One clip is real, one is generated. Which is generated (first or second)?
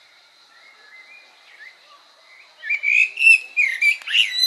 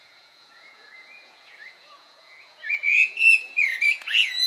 second